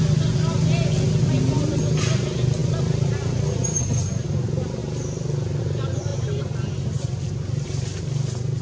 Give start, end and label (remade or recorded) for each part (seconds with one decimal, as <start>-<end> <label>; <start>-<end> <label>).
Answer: 0.0-8.6 recorded